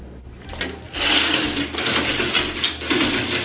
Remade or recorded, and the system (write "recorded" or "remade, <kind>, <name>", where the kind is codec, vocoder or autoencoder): recorded